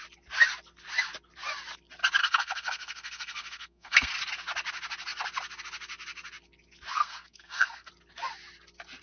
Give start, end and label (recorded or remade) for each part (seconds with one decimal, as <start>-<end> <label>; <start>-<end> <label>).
0.0-2.2 recorded; 2.2-4.1 remade; 4.1-6.9 recorded; 6.9-7.9 remade; 7.9-9.0 recorded